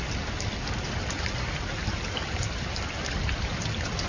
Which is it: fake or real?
real